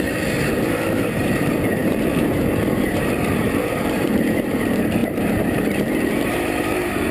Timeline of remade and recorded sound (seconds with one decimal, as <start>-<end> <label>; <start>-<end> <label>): 0.0-7.1 remade

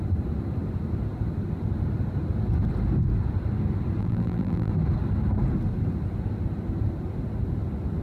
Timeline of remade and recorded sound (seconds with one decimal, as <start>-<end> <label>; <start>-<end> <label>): 0.0-4.0 recorded; 4.0-4.7 remade; 4.7-8.0 recorded

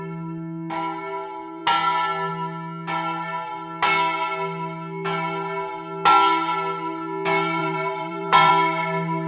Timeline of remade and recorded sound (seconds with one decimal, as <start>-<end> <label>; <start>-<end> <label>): 0.0-7.6 recorded; 7.6-8.5 remade; 8.5-9.3 recorded

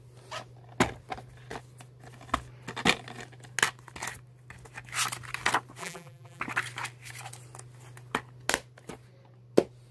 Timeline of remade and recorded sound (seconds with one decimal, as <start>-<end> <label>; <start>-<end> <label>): 0.0-5.8 recorded; 5.8-6.4 remade; 6.4-9.9 recorded